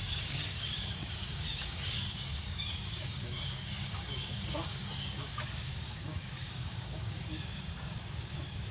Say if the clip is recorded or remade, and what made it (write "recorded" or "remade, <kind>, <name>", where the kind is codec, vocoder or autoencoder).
remade, codec, DAC